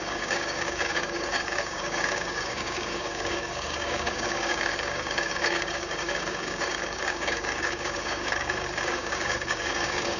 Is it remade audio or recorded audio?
remade